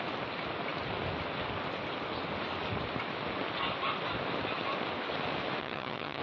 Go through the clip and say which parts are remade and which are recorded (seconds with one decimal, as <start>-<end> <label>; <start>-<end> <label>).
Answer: 0.0-5.6 recorded; 5.6-6.2 remade